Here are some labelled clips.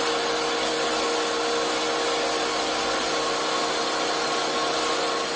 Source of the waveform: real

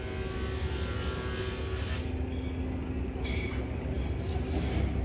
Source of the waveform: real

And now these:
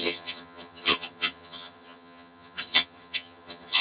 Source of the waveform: fake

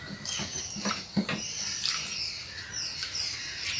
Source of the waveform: real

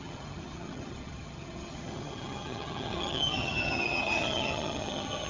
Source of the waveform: fake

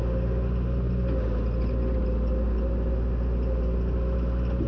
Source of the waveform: real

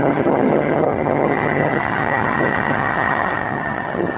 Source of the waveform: fake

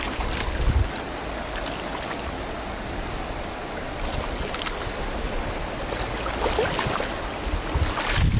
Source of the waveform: real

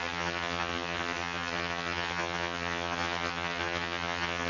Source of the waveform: fake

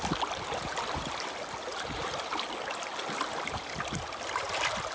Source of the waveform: real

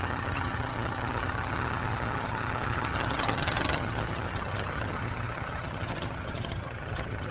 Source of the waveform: fake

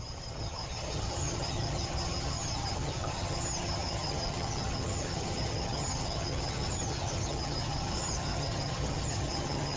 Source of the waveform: fake